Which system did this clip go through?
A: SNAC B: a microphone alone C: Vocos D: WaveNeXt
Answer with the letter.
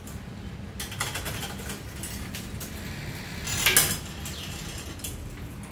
B